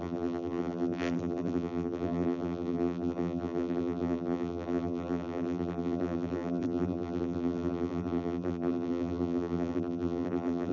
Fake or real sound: fake